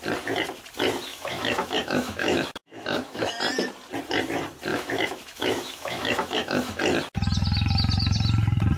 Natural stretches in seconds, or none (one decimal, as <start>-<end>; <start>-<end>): 0.0-1.1; 3.3-4.7; 6.8-8.8